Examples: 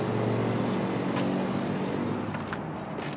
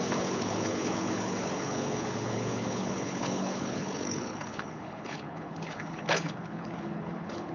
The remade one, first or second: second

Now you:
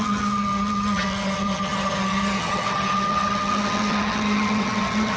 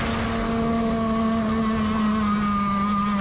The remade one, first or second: first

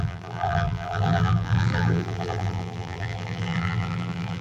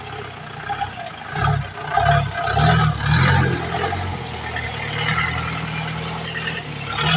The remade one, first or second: first